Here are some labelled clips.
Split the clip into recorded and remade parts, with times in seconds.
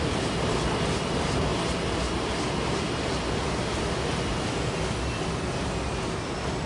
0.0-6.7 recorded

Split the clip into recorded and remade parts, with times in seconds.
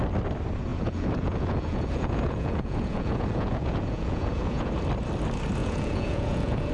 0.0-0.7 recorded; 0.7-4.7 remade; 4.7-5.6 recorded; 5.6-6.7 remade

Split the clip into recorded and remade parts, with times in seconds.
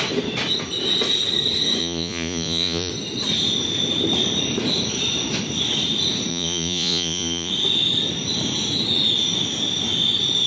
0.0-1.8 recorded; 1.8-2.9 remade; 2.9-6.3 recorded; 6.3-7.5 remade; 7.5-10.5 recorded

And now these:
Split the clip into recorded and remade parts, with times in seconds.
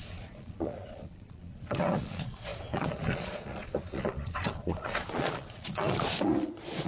0.0-6.9 remade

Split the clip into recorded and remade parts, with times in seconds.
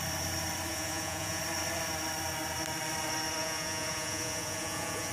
0.0-0.7 recorded; 0.7-1.4 remade; 1.4-3.4 recorded; 3.4-5.1 remade